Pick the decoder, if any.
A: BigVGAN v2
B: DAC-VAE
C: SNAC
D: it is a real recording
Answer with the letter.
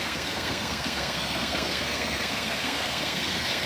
C